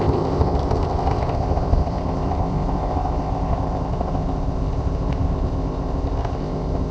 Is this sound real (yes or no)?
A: no